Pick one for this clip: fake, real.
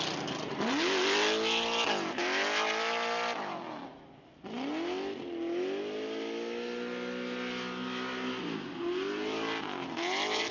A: real